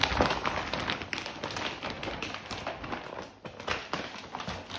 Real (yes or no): yes